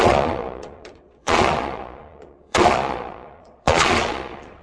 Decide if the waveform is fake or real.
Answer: fake